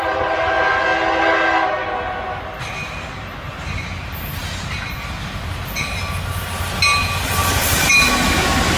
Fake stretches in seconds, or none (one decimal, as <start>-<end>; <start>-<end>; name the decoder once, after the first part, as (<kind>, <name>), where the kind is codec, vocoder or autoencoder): none